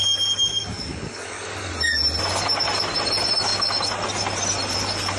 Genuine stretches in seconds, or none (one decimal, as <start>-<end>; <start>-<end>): 1.7-5.2